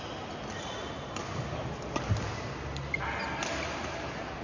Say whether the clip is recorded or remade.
recorded